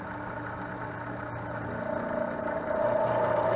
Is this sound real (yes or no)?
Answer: yes